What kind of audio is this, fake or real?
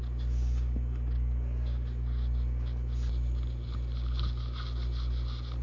real